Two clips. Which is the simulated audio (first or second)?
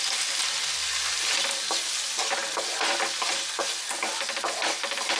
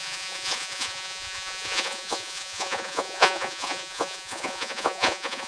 second